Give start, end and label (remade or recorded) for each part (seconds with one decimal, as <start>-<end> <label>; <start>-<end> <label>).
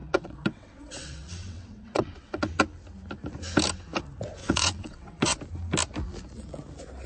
0.0-2.5 remade; 2.5-4.4 recorded; 4.4-5.4 remade; 5.4-7.1 recorded